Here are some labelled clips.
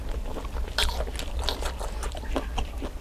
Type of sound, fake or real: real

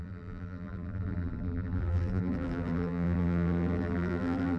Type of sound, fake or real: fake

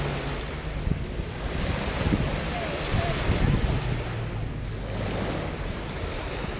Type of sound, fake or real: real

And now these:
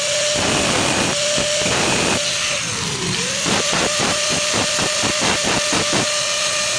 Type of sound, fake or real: real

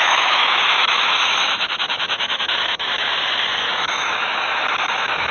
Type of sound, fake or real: fake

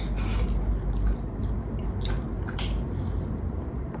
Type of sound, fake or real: real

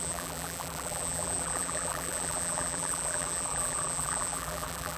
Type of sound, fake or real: fake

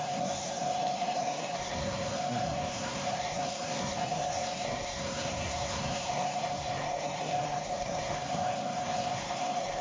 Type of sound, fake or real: fake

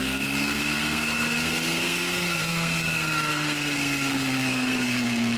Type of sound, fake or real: fake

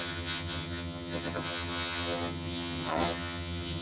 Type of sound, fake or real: fake